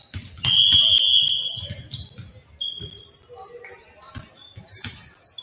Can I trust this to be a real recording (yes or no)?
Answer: yes